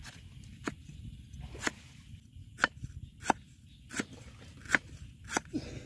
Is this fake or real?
real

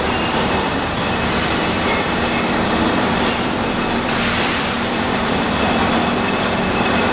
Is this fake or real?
fake